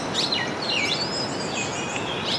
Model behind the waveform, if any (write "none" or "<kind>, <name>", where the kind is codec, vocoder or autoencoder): none